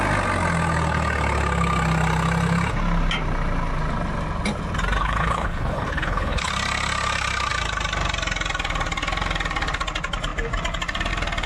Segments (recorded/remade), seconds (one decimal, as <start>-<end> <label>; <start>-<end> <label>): 0.0-5.0 recorded; 5.0-6.5 remade; 6.5-11.5 recorded